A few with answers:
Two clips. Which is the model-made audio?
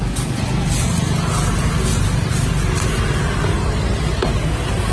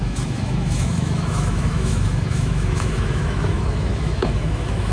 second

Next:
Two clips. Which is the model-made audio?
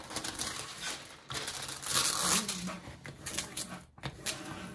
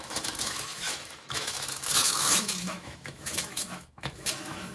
second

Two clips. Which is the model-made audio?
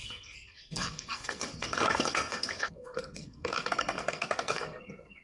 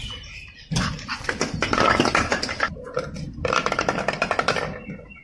first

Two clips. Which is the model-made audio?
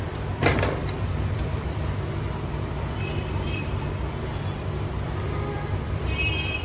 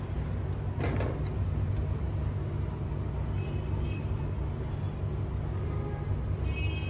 first